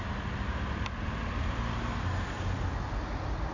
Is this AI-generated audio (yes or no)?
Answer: no